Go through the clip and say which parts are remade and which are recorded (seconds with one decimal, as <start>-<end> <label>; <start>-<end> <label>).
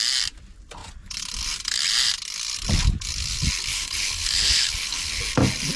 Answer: 0.0-3.7 recorded; 3.7-5.2 remade; 5.2-5.8 recorded